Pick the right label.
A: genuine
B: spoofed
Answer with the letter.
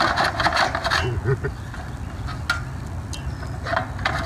A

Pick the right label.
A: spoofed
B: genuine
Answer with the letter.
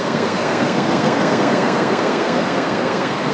A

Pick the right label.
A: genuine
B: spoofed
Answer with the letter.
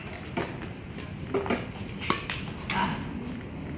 A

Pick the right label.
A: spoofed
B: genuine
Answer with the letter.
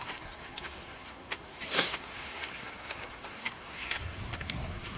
A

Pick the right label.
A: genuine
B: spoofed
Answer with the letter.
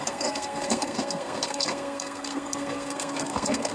B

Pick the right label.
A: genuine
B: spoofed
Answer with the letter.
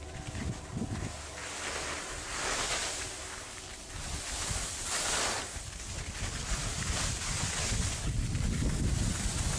A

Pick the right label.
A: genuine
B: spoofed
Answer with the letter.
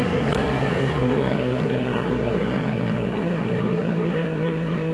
B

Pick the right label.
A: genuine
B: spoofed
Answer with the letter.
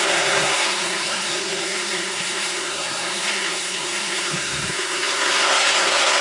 B